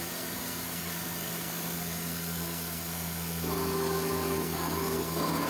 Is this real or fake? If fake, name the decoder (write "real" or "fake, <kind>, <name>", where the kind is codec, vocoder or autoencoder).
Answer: fake, codec, SNAC